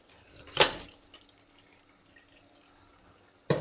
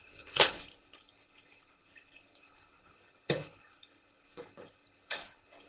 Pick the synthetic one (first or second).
second